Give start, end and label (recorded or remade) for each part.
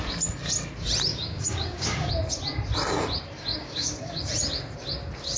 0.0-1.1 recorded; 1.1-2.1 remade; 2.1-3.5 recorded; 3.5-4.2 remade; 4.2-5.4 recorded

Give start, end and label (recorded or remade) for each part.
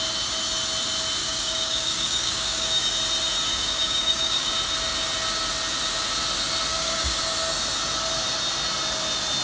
0.0-1.2 recorded; 1.2-2.9 remade; 2.9-3.5 recorded; 3.5-4.5 remade; 4.5-6.7 recorded; 6.7-7.2 remade; 7.2-9.4 recorded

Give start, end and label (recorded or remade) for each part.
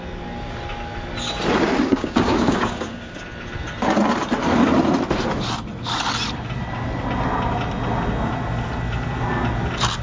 0.0-1.9 recorded; 1.9-3.2 remade; 3.2-10.0 recorded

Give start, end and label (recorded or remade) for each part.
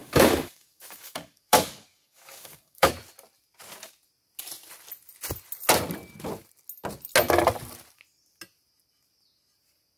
0.0-2.9 remade; 2.9-10.0 recorded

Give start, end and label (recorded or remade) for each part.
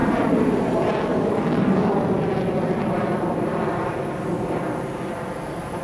0.0-1.1 recorded; 1.1-1.9 remade; 1.9-5.8 recorded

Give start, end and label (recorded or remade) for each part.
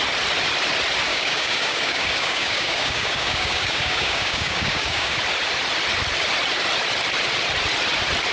0.0-1.1 recorded; 1.1-5.2 remade; 5.2-8.3 recorded